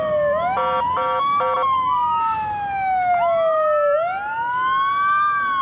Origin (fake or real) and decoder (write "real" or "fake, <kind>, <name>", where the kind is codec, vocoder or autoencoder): real